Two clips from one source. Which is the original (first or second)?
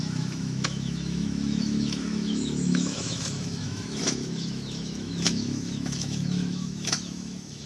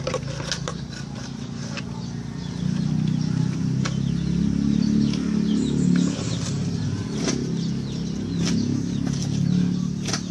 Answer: second